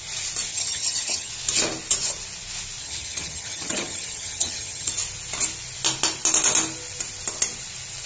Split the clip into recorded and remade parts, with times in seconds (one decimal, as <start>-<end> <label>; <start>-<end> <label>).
0.0-0.5 recorded; 0.5-1.3 remade; 1.3-2.8 recorded; 2.8-4.9 remade; 4.9-8.1 recorded